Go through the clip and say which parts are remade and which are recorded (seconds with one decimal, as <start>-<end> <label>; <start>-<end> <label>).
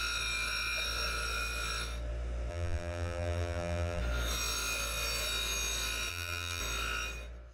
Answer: 0.0-2.5 recorded; 2.5-4.0 remade; 4.0-6.1 recorded; 6.1-6.6 remade; 6.6-7.5 recorded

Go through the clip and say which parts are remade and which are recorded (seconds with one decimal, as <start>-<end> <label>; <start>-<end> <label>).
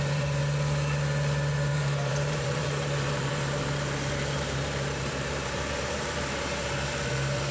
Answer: 0.0-0.4 remade; 0.4-1.7 recorded; 1.7-7.5 remade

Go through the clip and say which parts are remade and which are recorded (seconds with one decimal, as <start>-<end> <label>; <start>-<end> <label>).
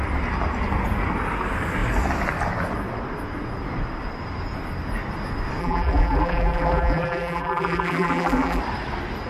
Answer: 0.0-5.6 recorded; 5.6-8.6 remade; 8.6-9.3 recorded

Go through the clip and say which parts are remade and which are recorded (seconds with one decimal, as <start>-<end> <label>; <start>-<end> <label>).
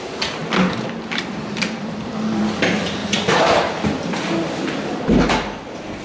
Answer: 0.0-0.4 recorded; 0.4-2.4 remade; 2.4-3.0 recorded; 3.0-5.0 remade; 5.0-6.0 recorded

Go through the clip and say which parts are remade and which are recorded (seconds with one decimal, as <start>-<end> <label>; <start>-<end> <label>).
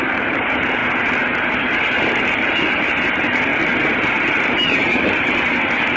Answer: 0.0-0.8 remade; 0.8-2.2 recorded; 2.2-3.5 remade; 3.5-4.3 recorded; 4.3-6.0 remade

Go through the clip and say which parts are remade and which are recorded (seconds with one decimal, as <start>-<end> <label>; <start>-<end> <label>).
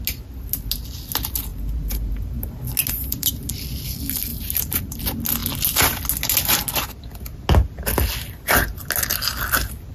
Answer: 0.0-1.5 recorded; 1.5-2.6 remade; 2.6-3.0 recorded; 3.0-3.5 remade; 3.5-4.3 recorded; 4.3-5.0 remade; 5.0-9.9 recorded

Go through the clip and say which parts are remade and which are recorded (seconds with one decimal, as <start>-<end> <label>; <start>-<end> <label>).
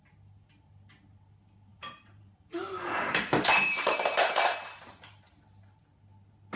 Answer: 0.0-1.7 recorded; 1.7-5.4 remade; 5.4-6.6 recorded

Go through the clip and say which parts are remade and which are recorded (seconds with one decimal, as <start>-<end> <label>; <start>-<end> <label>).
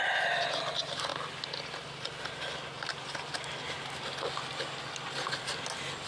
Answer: 0.0-6.1 recorded